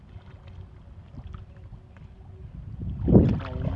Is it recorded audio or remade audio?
recorded